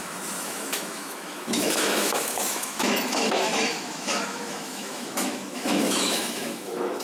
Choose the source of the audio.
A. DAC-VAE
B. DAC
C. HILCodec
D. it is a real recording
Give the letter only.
A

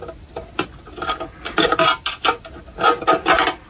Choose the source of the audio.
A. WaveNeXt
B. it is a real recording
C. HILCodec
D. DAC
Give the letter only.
B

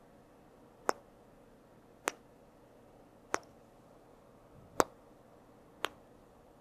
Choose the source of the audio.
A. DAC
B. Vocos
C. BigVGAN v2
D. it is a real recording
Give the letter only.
D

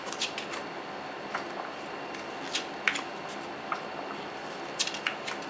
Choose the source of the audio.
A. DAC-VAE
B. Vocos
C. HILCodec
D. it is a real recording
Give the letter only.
D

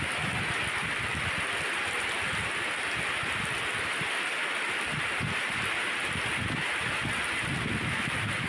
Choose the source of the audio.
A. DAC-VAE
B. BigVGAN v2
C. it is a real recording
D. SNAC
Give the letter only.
C